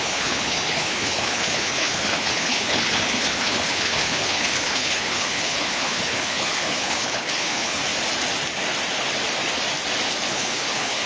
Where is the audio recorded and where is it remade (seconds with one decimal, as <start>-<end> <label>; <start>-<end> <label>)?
0.0-7.8 remade; 7.8-10.3 recorded; 10.3-11.1 remade